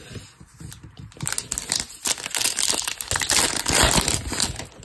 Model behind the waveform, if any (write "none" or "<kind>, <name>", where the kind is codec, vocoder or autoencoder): none